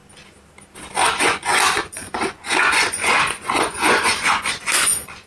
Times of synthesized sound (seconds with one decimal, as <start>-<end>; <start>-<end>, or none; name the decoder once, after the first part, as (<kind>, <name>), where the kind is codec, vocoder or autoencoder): 1.0-5.3 (vocoder, Vocos)